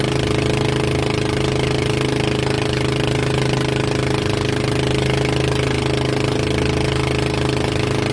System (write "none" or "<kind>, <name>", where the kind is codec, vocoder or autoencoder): none